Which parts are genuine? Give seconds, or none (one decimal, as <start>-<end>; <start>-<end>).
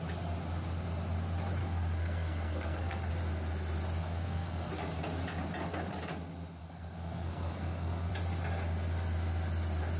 0.0-1.6; 3.1-4.0; 4.7-6.6; 8.1-10.0